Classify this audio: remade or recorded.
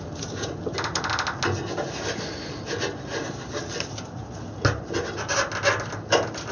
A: recorded